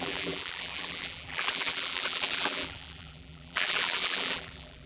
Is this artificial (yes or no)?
yes